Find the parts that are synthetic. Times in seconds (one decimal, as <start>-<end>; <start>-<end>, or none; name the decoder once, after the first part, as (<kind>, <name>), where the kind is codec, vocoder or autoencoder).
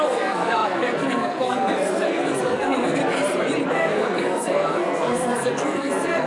0.0-3.0 (codec, SNAC); 3.7-6.3